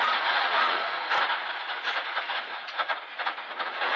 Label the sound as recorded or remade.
remade